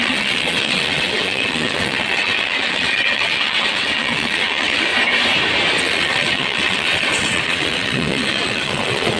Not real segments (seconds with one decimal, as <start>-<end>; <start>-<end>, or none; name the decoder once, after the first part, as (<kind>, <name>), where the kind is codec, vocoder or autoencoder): 0.0-4.9 (vocoder, WaveNeXt); 5.8-9.2